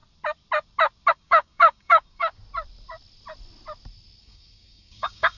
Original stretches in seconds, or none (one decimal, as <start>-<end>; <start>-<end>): 0.0-1.1; 2.4-4.2